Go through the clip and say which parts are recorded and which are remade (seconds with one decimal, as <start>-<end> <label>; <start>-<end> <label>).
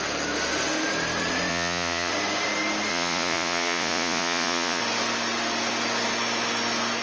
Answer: 0.0-1.5 recorded; 1.5-2.1 remade; 2.1-2.9 recorded; 2.9-4.8 remade; 4.8-7.0 recorded